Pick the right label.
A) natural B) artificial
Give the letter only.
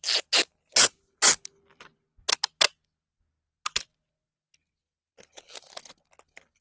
A